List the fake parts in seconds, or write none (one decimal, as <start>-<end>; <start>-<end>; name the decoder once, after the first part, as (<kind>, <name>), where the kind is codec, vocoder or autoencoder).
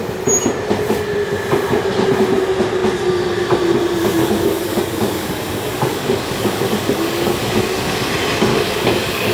4.2-8.1 (codec, DAC); 8.5-9.3